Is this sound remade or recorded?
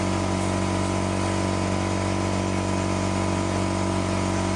recorded